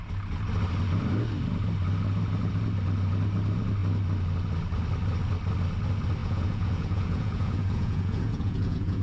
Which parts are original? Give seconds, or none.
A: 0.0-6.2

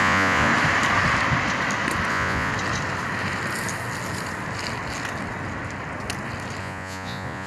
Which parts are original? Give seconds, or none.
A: 0.5-2.1; 2.5-6.6

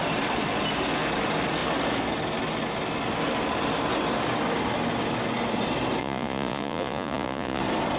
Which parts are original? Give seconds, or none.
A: 0.0-6.0; 7.6-8.0

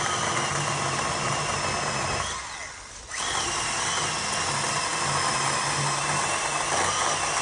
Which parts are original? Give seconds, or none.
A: 0.0-7.4

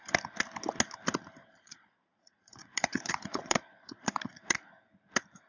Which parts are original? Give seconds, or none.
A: 0.0-1.4; 4.7-5.5

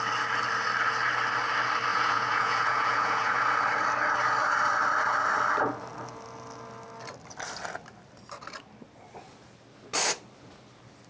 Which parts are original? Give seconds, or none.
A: 0.0-1.9; 3.4-11.1